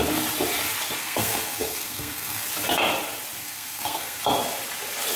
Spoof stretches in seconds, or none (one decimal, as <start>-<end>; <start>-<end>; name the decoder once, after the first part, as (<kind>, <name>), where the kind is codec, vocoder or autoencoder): 1.0-2.5 (codec, SNAC); 3.4-4.2